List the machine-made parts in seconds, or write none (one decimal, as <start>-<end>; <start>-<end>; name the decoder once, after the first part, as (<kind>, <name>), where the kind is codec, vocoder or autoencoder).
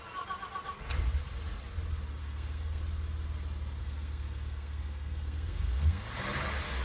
2.2-2.8 (codec, SNAC); 3.8-6.0